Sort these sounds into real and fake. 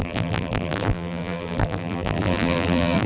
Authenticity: fake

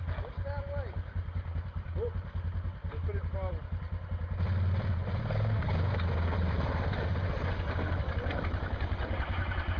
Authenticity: real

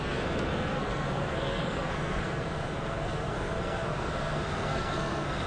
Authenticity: fake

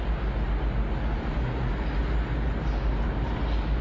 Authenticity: real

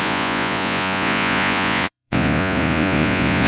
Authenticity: fake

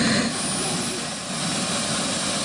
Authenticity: real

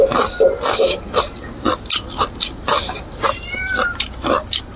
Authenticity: real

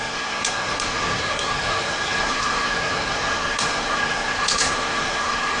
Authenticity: fake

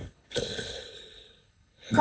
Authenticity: fake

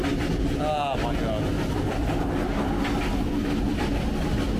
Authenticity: real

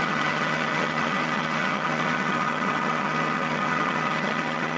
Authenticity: fake